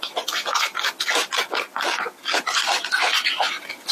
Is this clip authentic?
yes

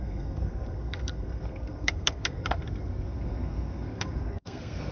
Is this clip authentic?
no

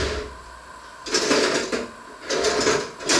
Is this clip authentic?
yes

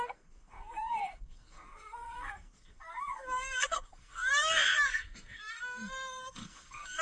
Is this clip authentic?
no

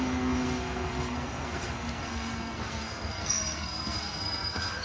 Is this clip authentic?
no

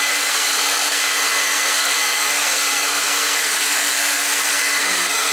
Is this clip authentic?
no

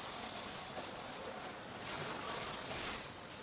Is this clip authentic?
yes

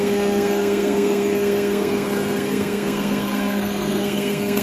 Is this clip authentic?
no